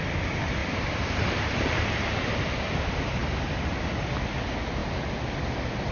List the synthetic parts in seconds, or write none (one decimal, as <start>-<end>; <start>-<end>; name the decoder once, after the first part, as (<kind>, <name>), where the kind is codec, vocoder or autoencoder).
none